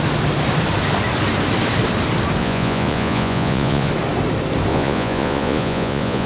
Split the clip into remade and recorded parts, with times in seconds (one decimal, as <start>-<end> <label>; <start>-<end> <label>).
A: 0.0-2.4 recorded; 2.4-3.9 remade; 3.9-4.7 recorded; 4.7-6.3 remade